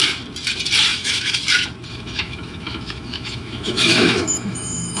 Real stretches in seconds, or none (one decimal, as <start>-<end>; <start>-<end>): 0.0-0.9; 1.4-1.9